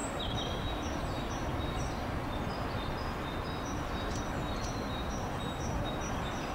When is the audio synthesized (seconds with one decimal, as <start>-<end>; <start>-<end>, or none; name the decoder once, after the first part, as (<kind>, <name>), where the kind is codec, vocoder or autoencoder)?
none